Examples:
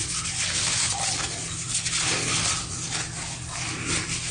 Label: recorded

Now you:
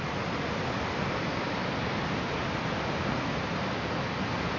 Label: recorded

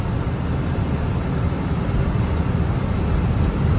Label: recorded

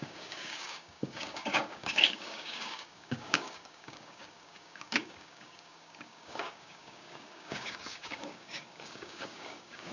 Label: remade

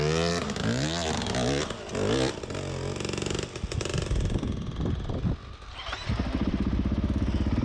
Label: recorded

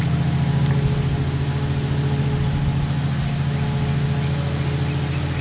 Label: recorded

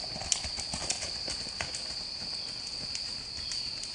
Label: recorded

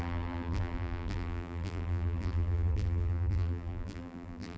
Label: remade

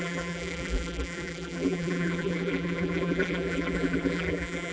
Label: remade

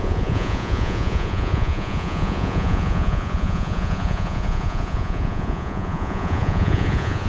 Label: remade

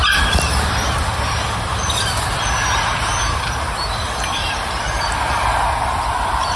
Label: remade